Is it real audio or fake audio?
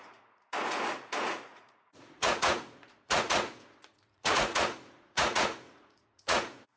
fake